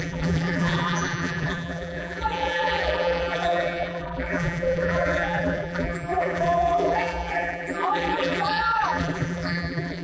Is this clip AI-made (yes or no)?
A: yes